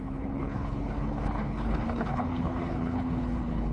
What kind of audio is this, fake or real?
fake